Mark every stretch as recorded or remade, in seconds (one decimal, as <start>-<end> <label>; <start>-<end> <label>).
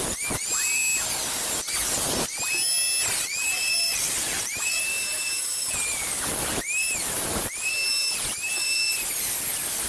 0.0-0.8 remade; 0.8-3.2 recorded; 3.2-9.9 remade